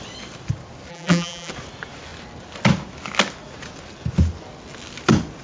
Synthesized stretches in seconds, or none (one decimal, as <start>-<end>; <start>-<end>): 0.9-1.5